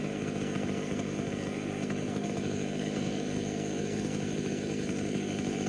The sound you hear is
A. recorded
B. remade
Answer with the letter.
B